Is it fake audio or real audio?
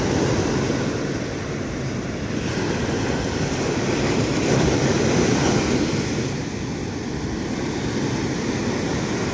real